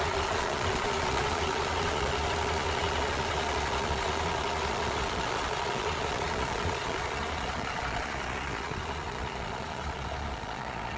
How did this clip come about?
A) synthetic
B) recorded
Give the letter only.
A